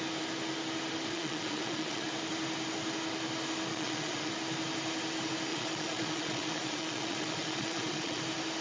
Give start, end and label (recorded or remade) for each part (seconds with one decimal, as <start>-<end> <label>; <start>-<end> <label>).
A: 0.0-1.1 recorded; 1.1-2.1 remade; 2.1-3.7 recorded; 3.7-4.3 remade; 4.3-5.5 recorded; 5.5-8.2 remade; 8.2-8.6 recorded